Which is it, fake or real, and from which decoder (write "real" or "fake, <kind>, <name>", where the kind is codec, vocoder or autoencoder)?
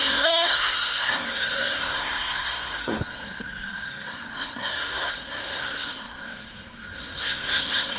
fake, codec, SNAC